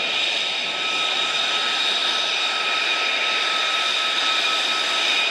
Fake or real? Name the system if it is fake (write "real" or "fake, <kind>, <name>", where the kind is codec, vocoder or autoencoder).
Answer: real